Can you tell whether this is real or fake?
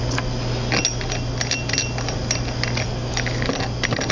real